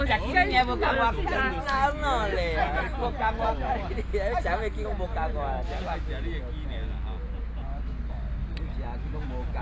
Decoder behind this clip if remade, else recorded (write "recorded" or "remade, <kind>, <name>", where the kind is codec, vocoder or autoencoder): recorded